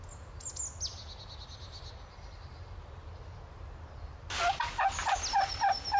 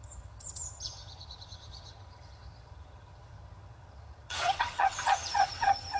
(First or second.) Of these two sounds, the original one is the first